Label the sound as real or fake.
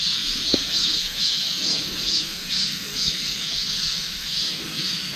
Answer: fake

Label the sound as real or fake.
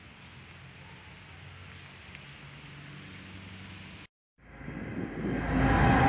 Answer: real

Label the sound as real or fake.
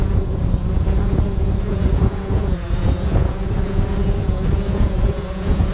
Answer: fake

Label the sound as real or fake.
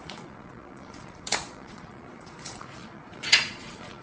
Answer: fake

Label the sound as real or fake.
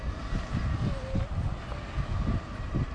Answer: real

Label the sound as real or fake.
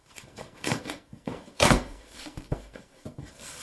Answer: fake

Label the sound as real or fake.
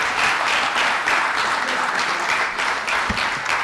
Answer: fake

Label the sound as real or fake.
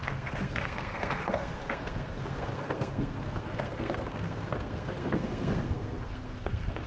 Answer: fake